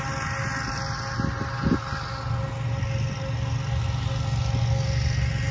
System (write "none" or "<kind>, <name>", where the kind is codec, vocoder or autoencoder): none